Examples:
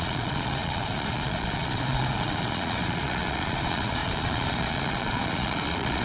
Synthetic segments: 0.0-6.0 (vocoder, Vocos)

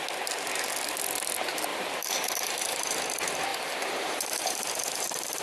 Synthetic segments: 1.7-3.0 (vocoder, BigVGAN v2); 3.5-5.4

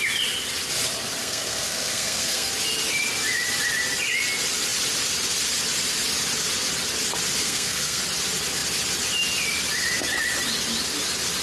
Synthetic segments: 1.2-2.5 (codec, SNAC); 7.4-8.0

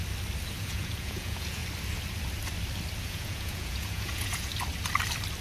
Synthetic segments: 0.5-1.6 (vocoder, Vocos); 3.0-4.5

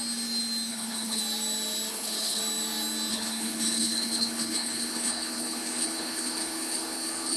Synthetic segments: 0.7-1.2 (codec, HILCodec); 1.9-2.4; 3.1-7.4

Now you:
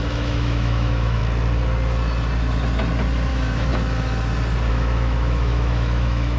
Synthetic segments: 0.0-1.2 (autoencoder, DAC-VAE); 3.3-3.7; 4.7-6.4